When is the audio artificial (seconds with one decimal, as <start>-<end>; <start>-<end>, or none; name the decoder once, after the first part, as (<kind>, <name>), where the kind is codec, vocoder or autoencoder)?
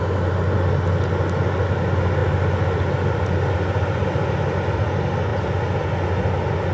none